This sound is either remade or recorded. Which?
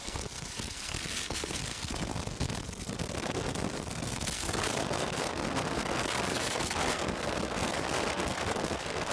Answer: remade